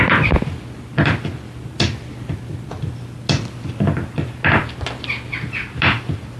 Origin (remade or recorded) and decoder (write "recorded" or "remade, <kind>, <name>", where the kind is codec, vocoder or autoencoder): recorded